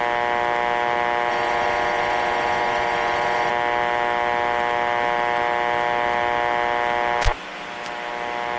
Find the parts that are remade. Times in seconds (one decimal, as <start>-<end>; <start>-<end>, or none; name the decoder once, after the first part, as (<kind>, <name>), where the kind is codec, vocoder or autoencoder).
1.3-3.5 (vocoder, Vocos)